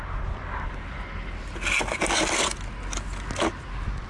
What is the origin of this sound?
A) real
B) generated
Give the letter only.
A